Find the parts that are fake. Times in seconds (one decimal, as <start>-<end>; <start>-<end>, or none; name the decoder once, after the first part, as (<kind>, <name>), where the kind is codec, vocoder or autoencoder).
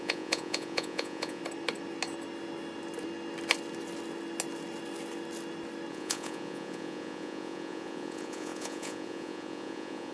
0.0-1.4 (vocoder, Vocos); 5.9-10.1